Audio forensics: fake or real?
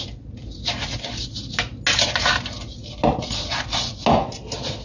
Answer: real